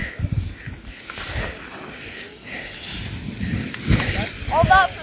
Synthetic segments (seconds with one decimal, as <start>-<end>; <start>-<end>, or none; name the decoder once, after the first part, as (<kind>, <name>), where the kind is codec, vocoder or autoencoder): none